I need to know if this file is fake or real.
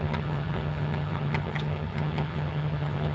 fake